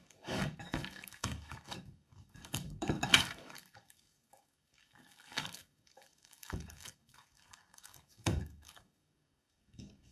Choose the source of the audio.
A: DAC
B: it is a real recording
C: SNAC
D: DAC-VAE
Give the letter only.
A